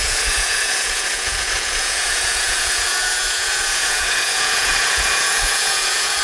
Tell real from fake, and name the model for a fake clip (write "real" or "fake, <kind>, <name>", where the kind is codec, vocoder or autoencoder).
fake, vocoder, Vocos